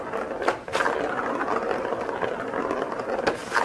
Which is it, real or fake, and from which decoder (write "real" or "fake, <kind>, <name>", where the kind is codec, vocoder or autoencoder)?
real